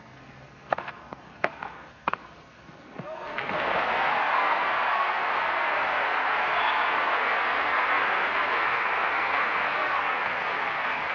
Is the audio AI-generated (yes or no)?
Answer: yes